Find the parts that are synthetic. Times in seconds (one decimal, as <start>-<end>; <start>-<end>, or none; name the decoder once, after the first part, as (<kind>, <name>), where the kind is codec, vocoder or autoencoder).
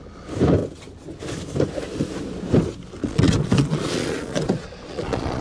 3.0-5.4 (vocoder, Vocos)